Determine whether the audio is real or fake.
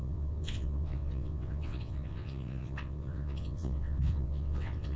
fake